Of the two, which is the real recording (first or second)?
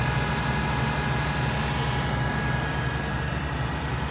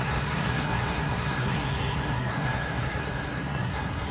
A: first